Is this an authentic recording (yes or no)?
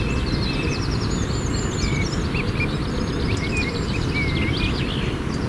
yes